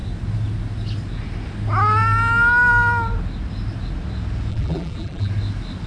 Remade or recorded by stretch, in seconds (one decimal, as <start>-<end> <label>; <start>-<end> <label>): 0.0-4.5 recorded; 4.5-5.3 remade; 5.3-5.9 recorded